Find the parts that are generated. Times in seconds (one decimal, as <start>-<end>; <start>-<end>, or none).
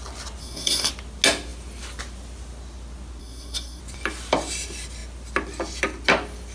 0.4-0.9; 3.2-3.8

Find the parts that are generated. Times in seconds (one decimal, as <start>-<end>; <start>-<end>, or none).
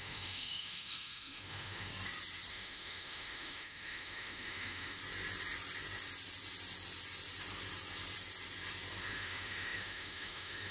0.0-1.9; 2.5-5.0; 9.0-10.7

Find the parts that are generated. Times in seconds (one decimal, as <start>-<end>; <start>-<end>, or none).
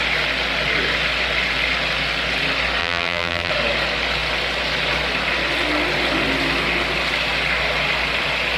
2.8-3.5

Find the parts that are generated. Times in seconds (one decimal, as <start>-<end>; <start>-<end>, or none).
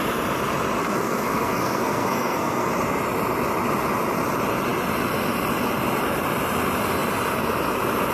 0.8-2.7